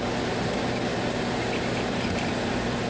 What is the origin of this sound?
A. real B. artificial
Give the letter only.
A